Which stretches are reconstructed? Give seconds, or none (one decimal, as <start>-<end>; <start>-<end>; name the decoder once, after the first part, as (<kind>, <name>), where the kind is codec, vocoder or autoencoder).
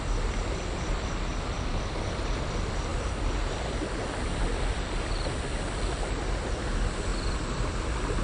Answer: 2.9-3.7 (vocoder, BigVGAN v2)